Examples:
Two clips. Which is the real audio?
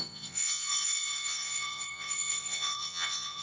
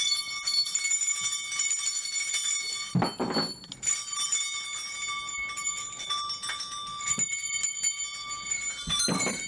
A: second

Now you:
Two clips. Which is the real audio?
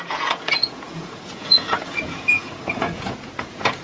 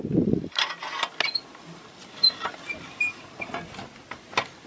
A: second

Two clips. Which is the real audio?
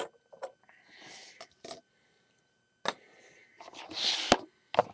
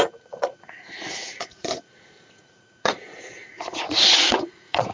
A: first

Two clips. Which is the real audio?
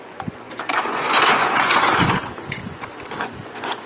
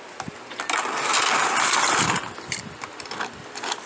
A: second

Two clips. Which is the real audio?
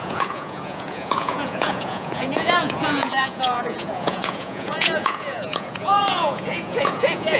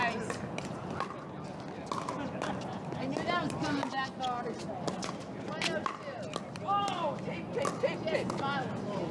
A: second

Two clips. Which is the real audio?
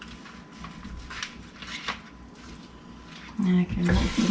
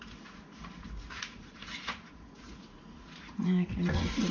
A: first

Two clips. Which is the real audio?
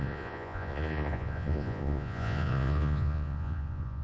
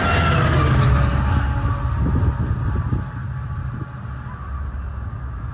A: second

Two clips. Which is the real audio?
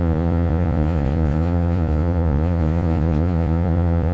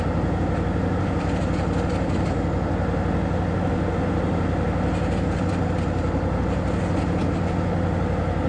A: second